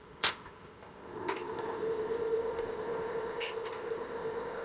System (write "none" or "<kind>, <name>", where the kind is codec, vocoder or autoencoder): codec, ZipCodec